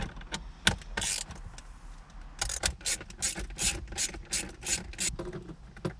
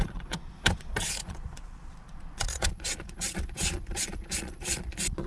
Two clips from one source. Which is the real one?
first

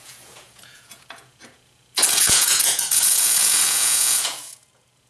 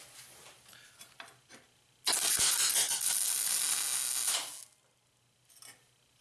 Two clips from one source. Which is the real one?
second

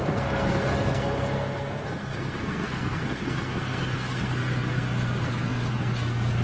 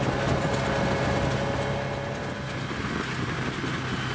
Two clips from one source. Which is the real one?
second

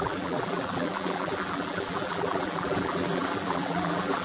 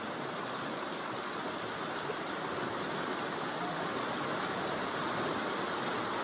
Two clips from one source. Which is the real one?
second